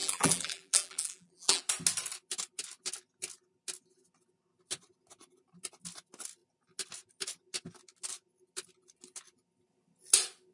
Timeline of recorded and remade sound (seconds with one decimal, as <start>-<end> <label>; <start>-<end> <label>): 0.0-1.6 remade; 1.6-10.5 recorded